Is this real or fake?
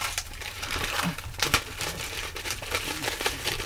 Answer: fake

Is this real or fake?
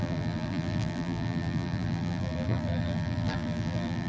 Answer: fake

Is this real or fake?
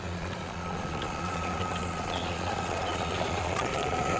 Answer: fake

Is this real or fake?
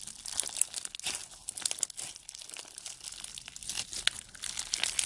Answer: real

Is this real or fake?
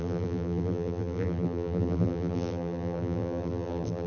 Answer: fake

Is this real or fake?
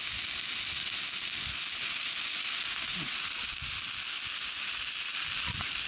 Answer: real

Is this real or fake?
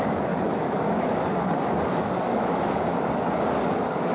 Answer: fake